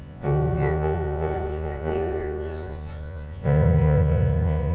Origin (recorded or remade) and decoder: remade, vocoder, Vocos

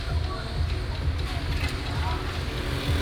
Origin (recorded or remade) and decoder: recorded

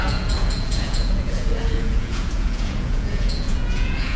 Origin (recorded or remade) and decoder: remade, vocoder, Vocos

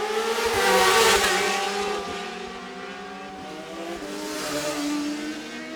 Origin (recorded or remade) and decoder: recorded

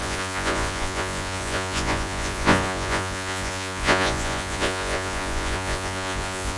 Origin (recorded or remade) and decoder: remade, vocoder, Vocos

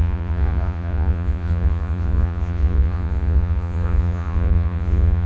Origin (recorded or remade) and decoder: remade, vocoder, Vocos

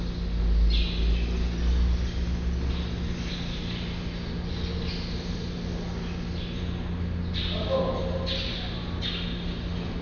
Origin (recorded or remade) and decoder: recorded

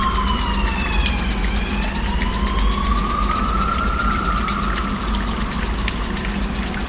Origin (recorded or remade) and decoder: recorded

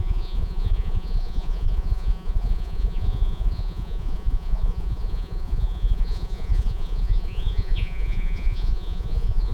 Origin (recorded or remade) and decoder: remade, vocoder, Vocos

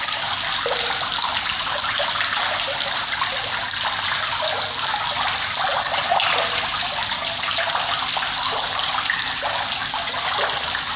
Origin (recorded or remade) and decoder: recorded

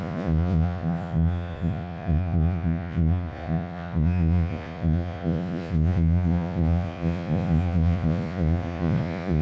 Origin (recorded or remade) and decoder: remade, vocoder, Vocos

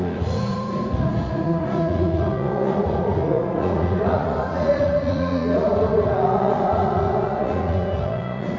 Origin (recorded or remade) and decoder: remade, vocoder, Vocos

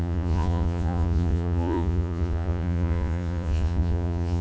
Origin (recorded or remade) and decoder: remade, vocoder, Vocos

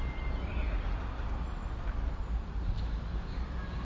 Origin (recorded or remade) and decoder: recorded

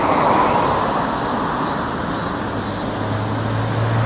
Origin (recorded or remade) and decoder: recorded